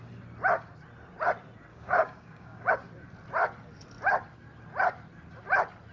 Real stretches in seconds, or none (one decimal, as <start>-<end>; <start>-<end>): 0.0-1.7; 2.7-5.9